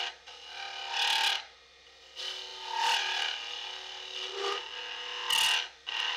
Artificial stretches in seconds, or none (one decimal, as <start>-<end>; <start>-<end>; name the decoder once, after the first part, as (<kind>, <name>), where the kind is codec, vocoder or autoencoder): none